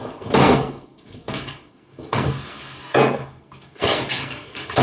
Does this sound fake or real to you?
fake